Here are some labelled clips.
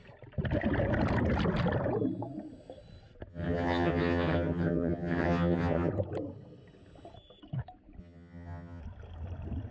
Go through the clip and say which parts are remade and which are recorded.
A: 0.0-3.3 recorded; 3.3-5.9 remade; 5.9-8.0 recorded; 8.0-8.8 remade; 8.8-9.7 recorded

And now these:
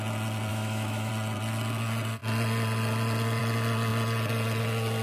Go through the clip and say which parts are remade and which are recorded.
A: 0.0-0.5 recorded; 0.5-1.1 remade; 1.1-5.0 recorded

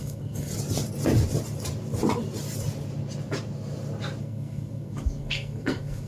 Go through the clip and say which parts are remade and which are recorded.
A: 0.0-0.5 remade; 0.5-4.2 recorded; 4.2-6.1 remade

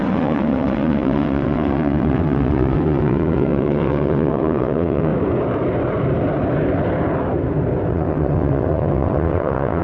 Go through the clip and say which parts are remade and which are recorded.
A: 0.0-5.1 remade; 5.1-7.9 recorded; 7.9-9.8 remade

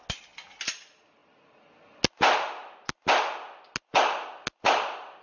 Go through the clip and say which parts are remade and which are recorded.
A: 0.0-5.2 recorded

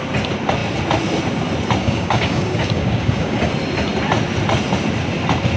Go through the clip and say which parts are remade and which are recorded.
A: 0.0-1.8 recorded; 1.8-3.5 remade; 3.5-5.6 recorded